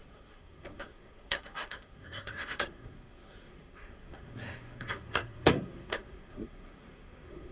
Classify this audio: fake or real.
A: fake